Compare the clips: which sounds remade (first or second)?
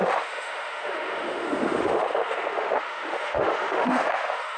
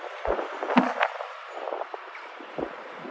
first